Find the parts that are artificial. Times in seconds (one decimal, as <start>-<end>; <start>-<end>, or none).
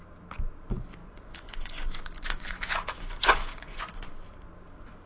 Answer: 1.0-4.1